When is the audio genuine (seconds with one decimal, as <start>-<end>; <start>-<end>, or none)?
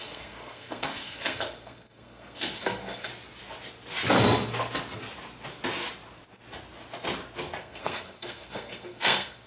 3.1-7.6